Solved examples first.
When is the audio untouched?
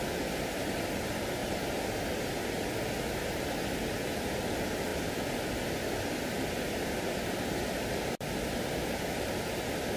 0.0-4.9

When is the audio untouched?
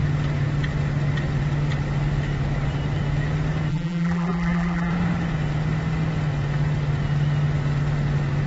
0.0-3.7; 4.9-8.5